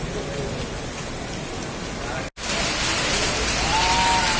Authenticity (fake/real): real